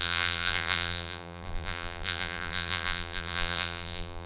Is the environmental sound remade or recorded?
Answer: remade